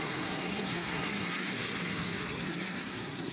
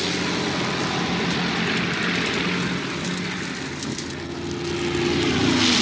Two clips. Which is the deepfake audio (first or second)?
first